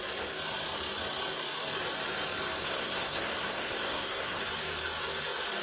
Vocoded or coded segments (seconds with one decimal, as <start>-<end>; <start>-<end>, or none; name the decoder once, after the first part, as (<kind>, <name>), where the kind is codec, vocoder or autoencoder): 2.6-4.4 (codec, SNAC)